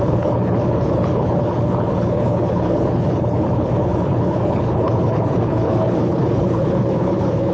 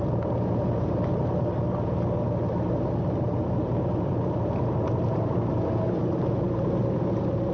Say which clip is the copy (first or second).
first